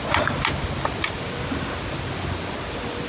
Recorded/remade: recorded